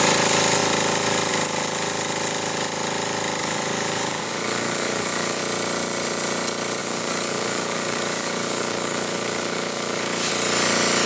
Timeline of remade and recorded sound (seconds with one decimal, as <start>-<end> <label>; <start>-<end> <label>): 0.0-3.4 recorded; 3.4-5.4 remade; 5.4-6.8 recorded; 6.8-10.3 remade; 10.3-11.1 recorded